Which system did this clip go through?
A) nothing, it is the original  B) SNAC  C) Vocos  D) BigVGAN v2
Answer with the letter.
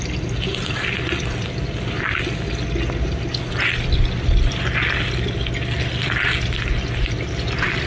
A